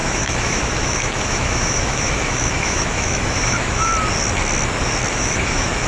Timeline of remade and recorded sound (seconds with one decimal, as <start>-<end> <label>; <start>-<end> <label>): 0.0-3.9 remade; 3.9-5.1 recorded; 5.1-5.9 remade

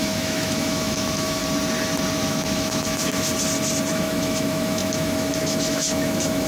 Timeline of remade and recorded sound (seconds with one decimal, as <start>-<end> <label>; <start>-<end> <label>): 0.0-1.4 remade; 1.4-2.3 recorded; 2.3-3.3 remade; 3.3-3.9 recorded; 3.9-6.5 remade

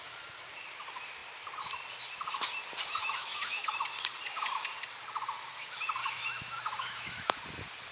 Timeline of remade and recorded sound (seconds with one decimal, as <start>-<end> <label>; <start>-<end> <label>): 0.0-3.0 recorded; 3.0-3.7 remade; 3.7-6.0 recorded; 6.0-7.4 remade; 7.4-7.9 recorded

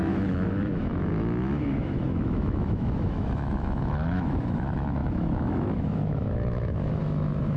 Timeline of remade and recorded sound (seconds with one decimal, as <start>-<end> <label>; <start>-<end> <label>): 0.0-7.6 remade

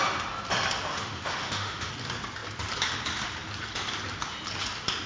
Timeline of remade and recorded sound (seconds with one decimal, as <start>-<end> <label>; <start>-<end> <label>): 0.0-0.9 recorded; 0.9-1.9 remade; 1.9-5.1 recorded

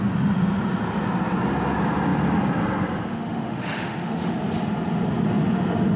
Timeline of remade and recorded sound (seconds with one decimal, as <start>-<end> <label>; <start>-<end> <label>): 0.0-3.1 recorded; 3.1-4.3 remade; 4.3-6.0 recorded

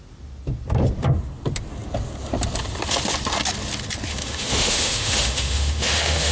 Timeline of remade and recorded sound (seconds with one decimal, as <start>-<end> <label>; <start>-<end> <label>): 0.0-4.1 recorded; 4.1-6.3 remade